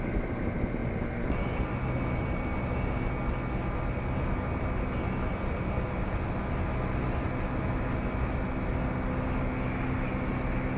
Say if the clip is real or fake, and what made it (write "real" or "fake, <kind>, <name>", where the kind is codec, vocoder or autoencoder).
real